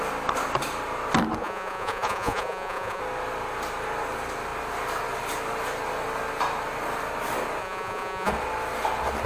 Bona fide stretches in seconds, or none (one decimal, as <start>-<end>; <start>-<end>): 0.0-1.4; 3.0-7.6; 8.3-9.3